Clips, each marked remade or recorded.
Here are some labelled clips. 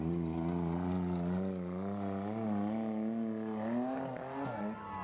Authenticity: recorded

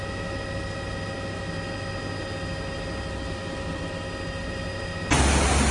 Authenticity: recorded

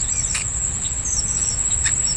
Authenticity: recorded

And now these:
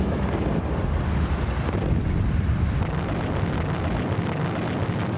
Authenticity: recorded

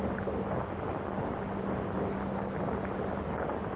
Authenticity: recorded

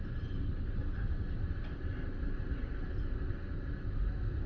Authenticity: recorded